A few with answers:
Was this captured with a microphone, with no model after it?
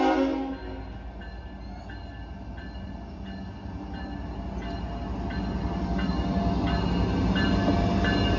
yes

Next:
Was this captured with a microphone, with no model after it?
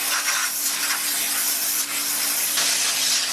yes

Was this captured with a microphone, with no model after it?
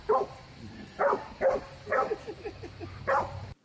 yes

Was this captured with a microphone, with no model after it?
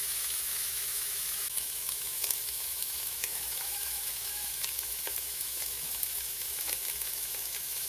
no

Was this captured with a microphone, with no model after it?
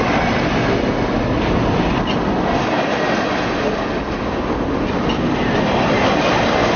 yes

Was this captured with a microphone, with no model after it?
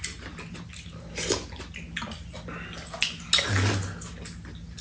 yes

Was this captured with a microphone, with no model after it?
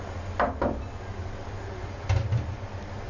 yes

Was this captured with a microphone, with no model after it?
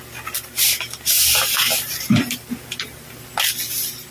yes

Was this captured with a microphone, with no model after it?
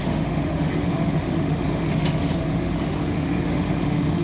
no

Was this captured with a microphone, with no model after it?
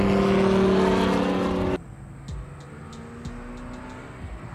yes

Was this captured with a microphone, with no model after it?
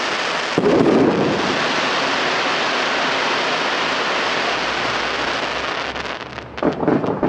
yes